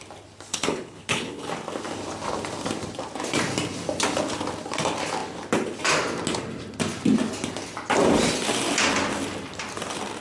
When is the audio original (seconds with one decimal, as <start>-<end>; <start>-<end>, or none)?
0.0-0.5; 1.5-10.2